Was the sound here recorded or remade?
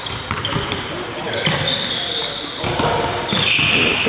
recorded